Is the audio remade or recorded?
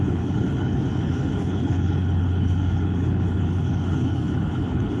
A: remade